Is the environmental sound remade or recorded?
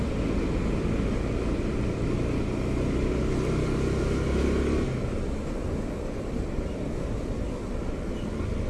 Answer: recorded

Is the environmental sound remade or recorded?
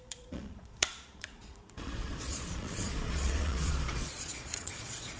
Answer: remade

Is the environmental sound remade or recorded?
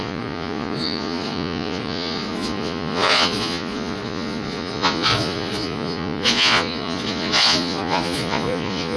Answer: remade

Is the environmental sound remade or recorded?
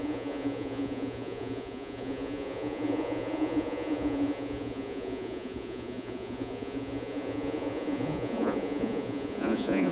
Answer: remade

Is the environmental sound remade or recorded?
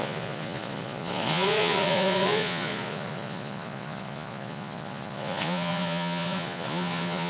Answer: remade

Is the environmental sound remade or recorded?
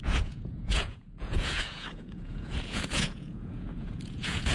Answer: remade